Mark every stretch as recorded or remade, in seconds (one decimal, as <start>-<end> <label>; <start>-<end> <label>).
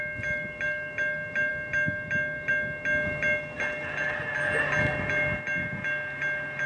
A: 0.0-6.7 recorded